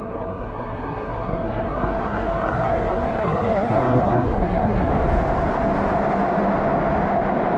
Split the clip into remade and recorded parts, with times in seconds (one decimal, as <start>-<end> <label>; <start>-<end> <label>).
0.0-4.9 remade; 4.9-7.6 recorded